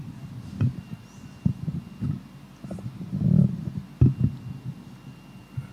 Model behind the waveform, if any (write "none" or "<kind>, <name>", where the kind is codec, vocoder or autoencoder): none